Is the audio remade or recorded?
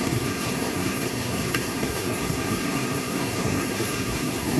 remade